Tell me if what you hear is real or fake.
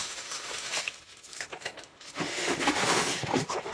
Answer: fake